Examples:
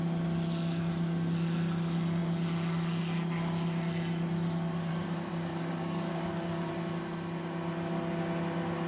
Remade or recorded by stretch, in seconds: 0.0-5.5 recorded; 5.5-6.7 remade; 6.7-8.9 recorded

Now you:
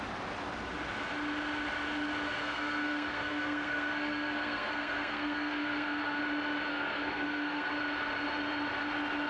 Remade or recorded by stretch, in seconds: 0.0-2.4 recorded; 2.4-6.2 remade; 6.2-6.7 recorded; 6.7-7.7 remade; 7.7-9.3 recorded

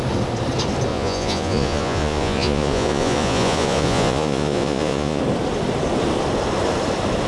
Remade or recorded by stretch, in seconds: 0.0-0.9 recorded; 0.9-5.2 remade; 5.2-7.3 recorded

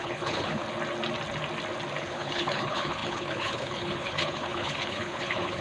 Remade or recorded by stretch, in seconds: 0.0-0.6 remade; 0.6-2.0 recorded; 2.0-5.6 remade

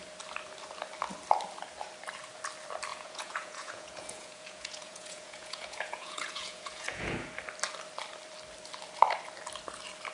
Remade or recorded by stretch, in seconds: 0.0-2.9 recorded; 2.9-7.3 remade; 7.3-10.1 recorded

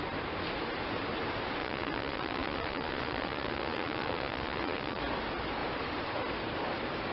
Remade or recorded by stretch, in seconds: 0.0-1.6 recorded; 1.6-5.0 remade; 5.0-7.1 recorded